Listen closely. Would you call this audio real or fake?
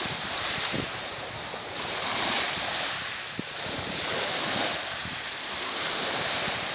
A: fake